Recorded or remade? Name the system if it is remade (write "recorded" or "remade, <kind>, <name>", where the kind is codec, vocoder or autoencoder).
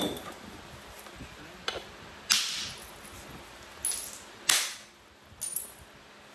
recorded